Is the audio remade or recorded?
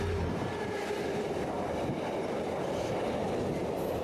recorded